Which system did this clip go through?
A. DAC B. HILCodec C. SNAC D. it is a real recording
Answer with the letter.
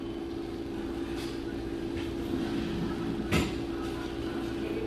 D